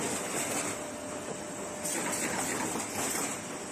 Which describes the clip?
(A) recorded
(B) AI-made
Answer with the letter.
A